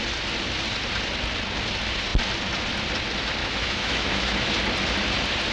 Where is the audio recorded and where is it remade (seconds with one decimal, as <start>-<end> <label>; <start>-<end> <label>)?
0.0-3.4 recorded; 3.4-4.5 remade; 4.5-5.5 recorded